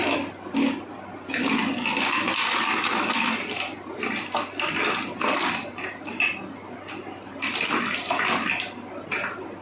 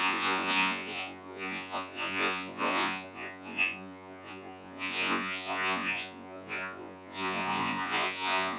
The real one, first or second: first